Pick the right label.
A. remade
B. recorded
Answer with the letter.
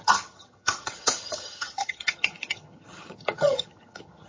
A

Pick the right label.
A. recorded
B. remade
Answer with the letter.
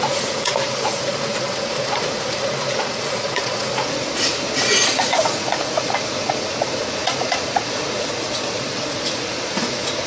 B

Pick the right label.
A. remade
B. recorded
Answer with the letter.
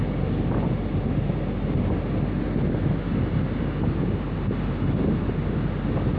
B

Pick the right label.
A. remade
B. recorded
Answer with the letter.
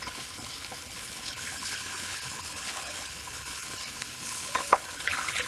A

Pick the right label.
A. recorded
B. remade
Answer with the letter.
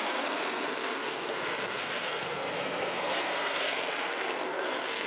B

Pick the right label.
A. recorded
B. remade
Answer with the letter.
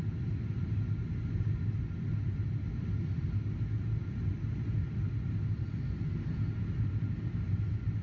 A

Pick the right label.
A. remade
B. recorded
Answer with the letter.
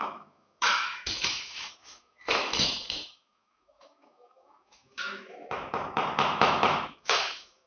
A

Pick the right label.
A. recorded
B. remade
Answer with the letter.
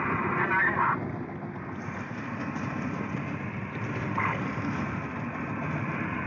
A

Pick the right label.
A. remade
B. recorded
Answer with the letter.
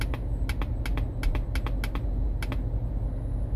B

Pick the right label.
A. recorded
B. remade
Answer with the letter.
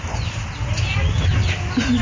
A